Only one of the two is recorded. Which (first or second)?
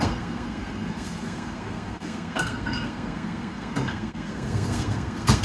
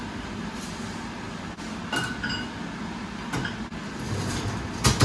second